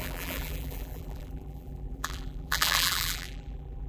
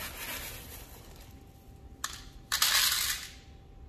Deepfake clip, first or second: first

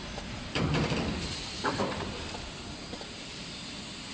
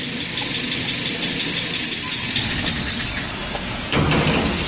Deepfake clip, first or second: first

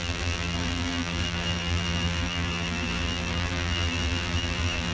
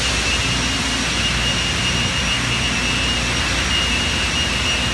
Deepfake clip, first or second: first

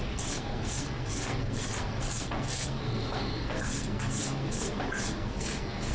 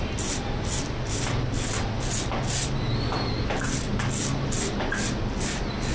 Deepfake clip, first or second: first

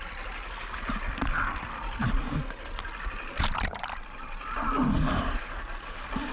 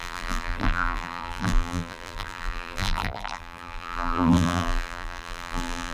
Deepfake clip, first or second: second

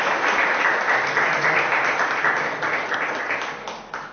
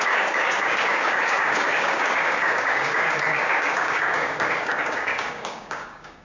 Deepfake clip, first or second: second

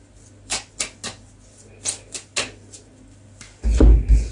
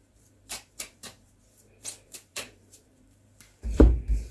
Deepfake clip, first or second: second